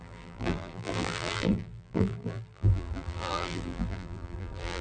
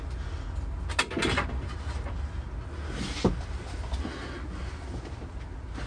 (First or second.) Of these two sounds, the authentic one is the second